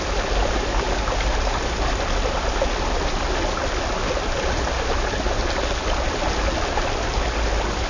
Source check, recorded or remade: recorded